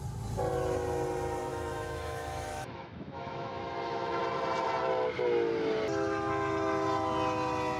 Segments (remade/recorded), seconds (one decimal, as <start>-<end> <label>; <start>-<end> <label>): 0.0-1.5 recorded; 1.5-4.2 remade; 4.2-7.8 recorded